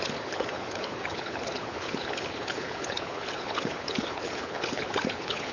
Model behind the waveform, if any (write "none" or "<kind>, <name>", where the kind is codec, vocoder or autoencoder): codec, HILCodec